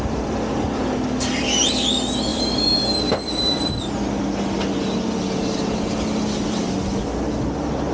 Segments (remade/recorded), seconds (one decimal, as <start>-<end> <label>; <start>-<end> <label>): 0.0-2.3 recorded; 2.3-4.1 remade; 4.1-7.9 recorded